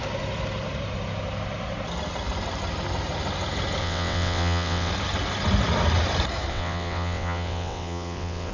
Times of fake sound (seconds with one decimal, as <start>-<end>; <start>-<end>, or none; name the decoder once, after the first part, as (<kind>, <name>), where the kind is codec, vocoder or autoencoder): 3.8-4.9 (vocoder, WaveNeXt); 6.5-8.5